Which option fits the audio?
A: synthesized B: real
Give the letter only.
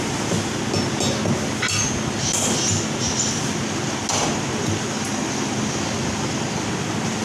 B